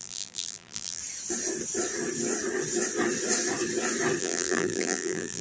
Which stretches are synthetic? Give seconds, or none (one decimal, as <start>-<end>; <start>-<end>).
0.0-1.0; 4.2-5.4